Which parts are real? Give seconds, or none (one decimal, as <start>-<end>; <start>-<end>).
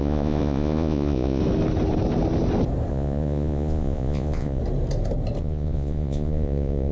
1.4-2.9; 4.6-5.4